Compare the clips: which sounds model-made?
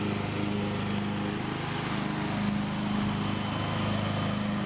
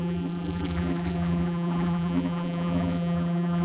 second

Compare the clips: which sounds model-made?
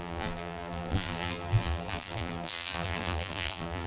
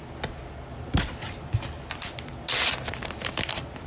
first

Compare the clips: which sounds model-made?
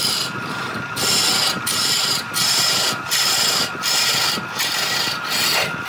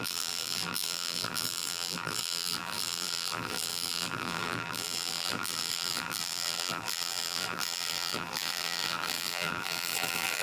second